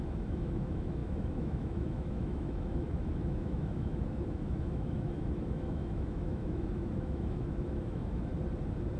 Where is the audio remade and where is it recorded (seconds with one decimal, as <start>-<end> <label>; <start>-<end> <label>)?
0.0-8.3 remade; 8.3-9.0 recorded